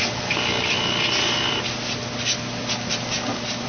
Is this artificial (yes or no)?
no